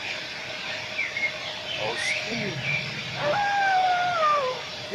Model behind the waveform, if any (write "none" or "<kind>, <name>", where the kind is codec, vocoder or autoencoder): vocoder, BigVGAN v2